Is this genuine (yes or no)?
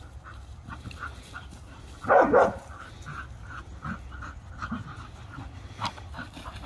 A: yes